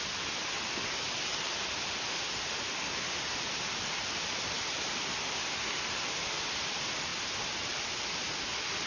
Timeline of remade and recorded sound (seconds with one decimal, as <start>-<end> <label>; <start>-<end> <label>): 0.0-8.9 recorded